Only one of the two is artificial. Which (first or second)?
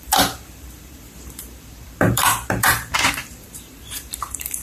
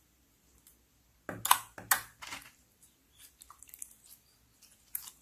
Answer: first